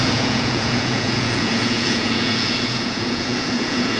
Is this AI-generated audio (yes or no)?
yes